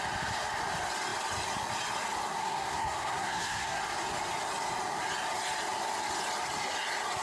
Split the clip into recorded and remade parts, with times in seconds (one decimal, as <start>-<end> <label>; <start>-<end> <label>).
0.0-2.4 recorded; 2.4-3.8 remade; 3.8-7.2 recorded